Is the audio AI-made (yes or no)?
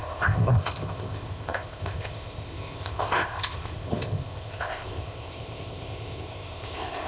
yes